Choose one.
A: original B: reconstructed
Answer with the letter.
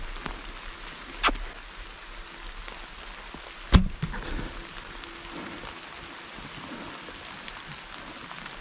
A